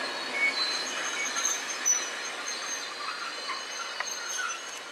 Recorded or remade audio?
recorded